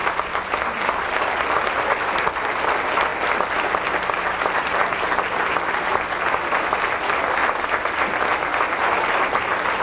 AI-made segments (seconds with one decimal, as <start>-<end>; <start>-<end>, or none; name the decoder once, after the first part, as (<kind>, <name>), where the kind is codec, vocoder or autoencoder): 0.0-1.2 (vocoder, BigVGAN v2)